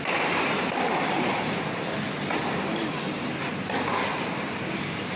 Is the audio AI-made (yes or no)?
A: no